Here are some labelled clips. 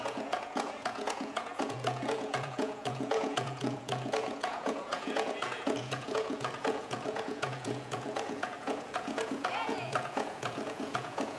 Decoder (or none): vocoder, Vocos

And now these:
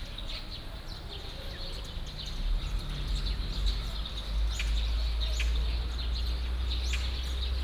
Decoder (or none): none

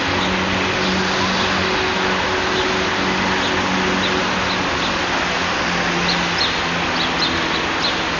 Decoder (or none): none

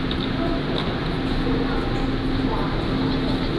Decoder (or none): none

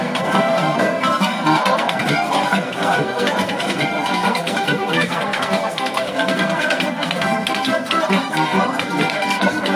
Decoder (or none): codec, SNAC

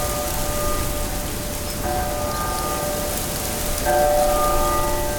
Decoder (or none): none